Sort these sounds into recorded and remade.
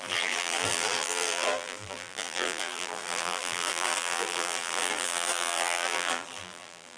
remade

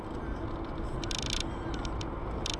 recorded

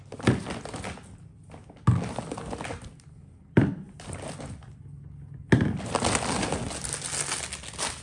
recorded